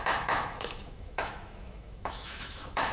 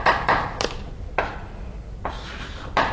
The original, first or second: second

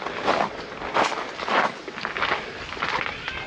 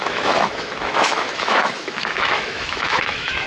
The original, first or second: first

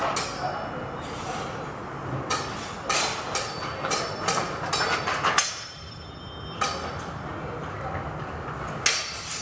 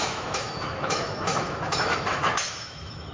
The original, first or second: first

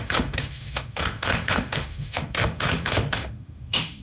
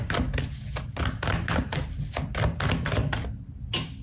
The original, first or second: second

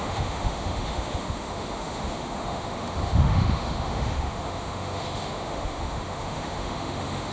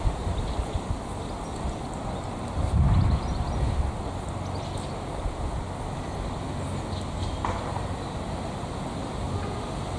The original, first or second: second